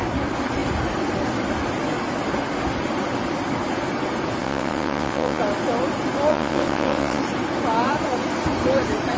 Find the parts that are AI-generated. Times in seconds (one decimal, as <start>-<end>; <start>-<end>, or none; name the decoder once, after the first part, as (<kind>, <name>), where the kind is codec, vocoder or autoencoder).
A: 4.4-5.4 (vocoder, WaveNeXt); 6.3-7.2